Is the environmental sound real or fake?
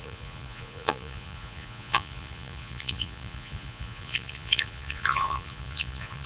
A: fake